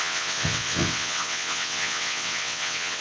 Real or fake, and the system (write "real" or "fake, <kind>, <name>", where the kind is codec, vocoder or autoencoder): fake, vocoder, WaveNeXt